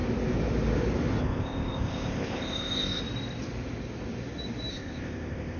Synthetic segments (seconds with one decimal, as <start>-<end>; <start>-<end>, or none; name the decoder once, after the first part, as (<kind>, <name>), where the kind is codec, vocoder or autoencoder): 1.2-3.0 (codec, ZipCodec); 4.7-5.6